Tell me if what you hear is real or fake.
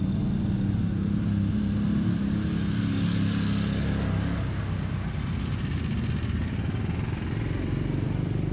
real